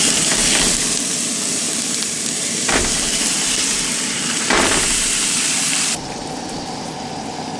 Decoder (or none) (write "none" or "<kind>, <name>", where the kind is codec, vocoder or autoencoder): vocoder, BigVGAN v2